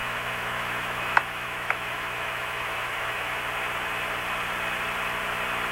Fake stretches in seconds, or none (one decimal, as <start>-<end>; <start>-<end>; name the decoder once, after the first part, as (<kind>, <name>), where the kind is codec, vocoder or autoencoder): 0.0-3.4 (autoencoder, DAC-VAE)